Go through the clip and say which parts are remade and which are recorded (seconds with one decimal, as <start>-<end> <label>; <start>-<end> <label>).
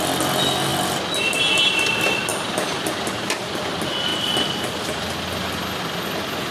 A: 0.0-0.7 recorded; 0.7-1.4 remade; 1.4-2.3 recorded; 2.3-2.9 remade; 2.9-4.1 recorded; 4.1-5.0 remade; 5.0-6.5 recorded